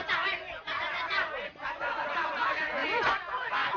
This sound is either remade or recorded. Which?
remade